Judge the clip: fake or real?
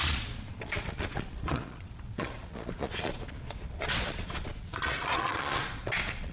fake